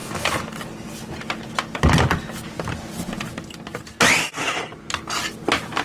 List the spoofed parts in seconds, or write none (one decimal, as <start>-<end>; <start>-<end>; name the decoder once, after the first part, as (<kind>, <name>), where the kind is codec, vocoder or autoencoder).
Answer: 3.7-4.4 (vocoder, BigVGAN v2)

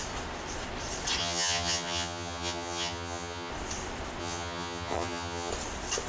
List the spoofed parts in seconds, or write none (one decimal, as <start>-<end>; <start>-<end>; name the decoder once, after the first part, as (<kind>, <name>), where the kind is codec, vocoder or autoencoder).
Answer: 1.2-3.5 (vocoder, HiFi-GAN); 4.2-5.5